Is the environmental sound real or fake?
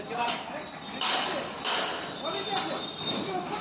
fake